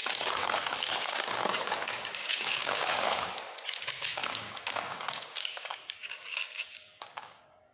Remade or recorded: remade